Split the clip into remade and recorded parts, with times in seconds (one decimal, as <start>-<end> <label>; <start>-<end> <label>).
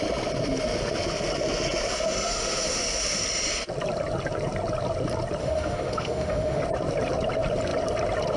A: 0.0-2.3 recorded; 2.3-3.2 remade; 3.2-5.4 recorded; 5.4-6.6 remade; 6.6-8.4 recorded